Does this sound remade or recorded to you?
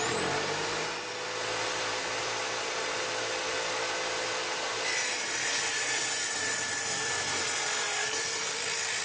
recorded